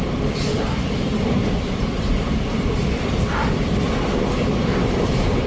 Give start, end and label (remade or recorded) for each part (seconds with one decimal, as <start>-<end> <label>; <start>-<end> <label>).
0.0-0.5 recorded; 0.5-3.8 remade; 3.8-5.5 recorded